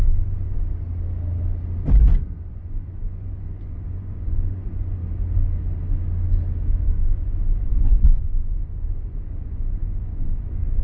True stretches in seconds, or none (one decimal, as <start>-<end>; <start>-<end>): 0.6-2.5; 5.0-6.8